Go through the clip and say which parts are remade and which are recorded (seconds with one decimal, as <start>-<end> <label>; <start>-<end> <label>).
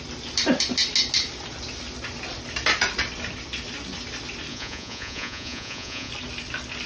0.0-4.5 recorded; 4.5-6.1 remade; 6.1-6.9 recorded